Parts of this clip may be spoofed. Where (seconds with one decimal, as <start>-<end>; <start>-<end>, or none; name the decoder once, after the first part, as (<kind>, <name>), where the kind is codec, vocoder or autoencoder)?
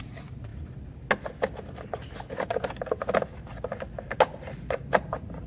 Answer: none